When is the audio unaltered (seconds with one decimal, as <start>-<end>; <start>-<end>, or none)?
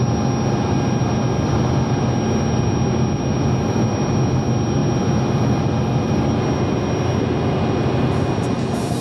0.0-9.0